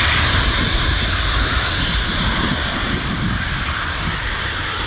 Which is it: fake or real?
real